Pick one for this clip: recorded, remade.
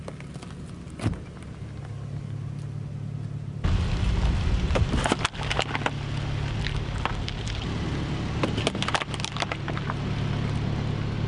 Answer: recorded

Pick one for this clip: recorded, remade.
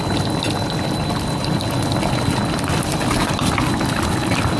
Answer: recorded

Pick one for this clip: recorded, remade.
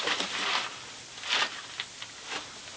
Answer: recorded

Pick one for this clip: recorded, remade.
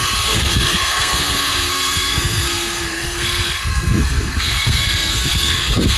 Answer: remade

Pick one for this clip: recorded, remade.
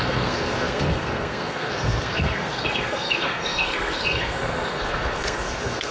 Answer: remade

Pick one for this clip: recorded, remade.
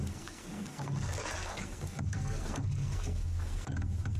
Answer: remade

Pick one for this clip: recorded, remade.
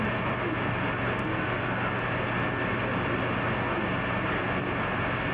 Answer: recorded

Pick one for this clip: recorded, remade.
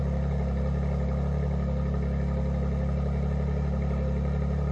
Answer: recorded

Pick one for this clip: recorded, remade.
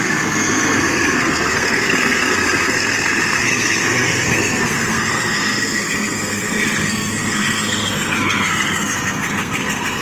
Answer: remade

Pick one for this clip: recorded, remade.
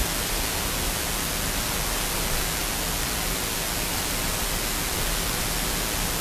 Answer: recorded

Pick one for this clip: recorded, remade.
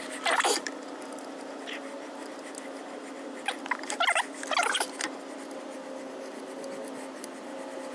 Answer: recorded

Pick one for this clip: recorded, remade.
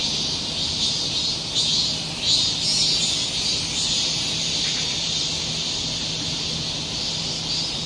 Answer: recorded